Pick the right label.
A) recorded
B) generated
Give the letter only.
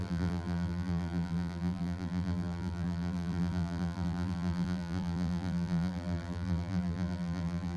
B